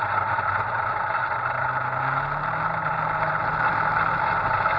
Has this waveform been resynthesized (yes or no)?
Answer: no